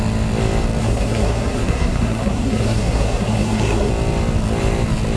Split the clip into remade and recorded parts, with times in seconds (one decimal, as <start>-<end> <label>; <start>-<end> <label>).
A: 0.0-0.8 recorded; 0.8-3.9 remade; 3.9-5.2 recorded